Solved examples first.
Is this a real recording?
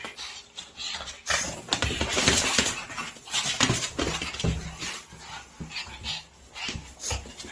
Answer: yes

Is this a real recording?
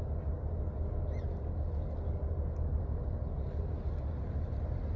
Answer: yes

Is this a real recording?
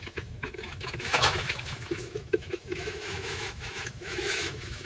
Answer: no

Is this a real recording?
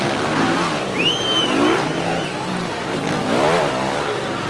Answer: yes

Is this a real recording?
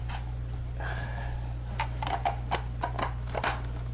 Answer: yes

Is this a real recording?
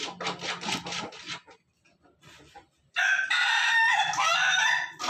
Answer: yes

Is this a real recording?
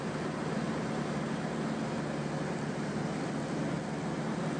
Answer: yes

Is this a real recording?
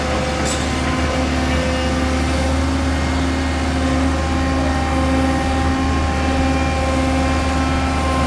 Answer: yes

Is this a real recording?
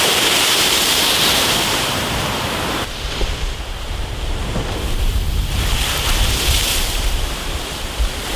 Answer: no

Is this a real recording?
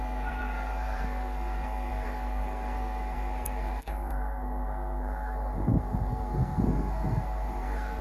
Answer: no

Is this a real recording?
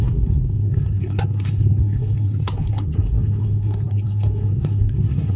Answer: no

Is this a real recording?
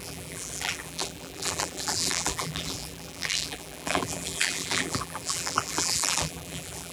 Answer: no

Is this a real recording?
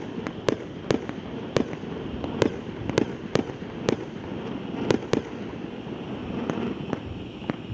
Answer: yes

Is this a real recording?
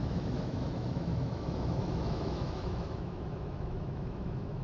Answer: no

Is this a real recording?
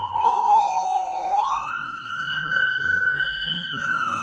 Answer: no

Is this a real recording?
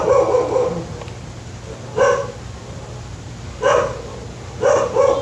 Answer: yes